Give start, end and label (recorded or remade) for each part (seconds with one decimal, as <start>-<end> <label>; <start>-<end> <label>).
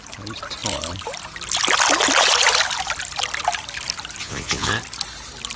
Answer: 0.0-4.2 recorded; 4.2-4.7 remade; 4.7-5.6 recorded